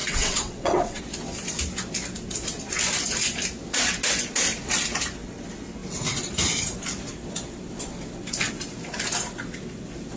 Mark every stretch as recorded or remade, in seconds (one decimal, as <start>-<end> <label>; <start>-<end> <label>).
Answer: 0.0-1.0 remade; 1.0-10.2 recorded